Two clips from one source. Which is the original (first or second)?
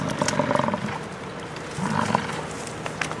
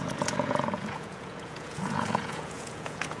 first